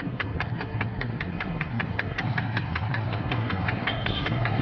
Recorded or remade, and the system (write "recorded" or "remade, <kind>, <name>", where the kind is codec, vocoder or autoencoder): remade, codec, SNAC